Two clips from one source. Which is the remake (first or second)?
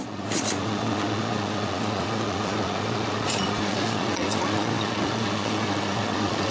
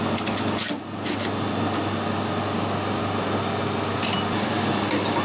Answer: first